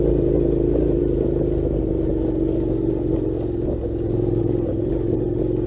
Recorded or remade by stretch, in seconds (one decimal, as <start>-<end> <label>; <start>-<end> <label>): 0.0-5.7 recorded